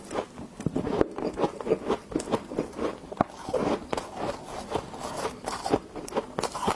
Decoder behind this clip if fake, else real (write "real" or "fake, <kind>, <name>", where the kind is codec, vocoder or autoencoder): real